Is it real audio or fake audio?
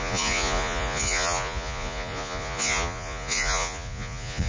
fake